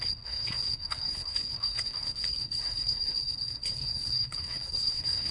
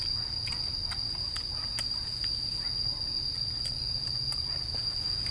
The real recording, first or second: second